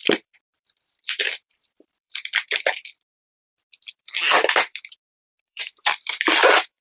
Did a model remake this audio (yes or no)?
yes